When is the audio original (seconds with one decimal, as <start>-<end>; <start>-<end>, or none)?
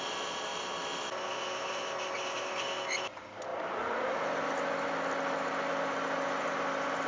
0.0-7.1